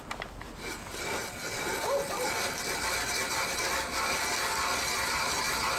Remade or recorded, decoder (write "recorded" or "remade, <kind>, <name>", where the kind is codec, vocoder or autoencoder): recorded